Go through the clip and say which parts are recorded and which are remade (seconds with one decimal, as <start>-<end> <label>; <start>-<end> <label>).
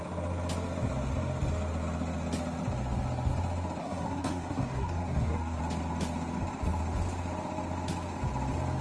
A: 0.0-3.8 recorded; 3.8-5.6 remade; 5.6-8.8 recorded